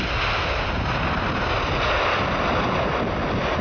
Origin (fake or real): real